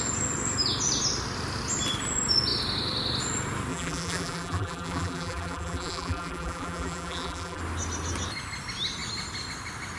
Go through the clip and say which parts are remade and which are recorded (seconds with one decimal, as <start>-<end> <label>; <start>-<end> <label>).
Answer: 0.0-3.7 recorded; 3.7-7.6 remade; 7.6-10.0 recorded